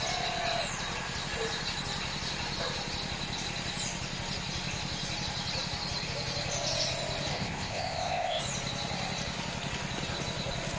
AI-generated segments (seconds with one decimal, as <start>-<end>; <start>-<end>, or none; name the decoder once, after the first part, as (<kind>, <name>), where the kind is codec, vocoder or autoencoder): 7.3-8.4 (codec, ZipCodec)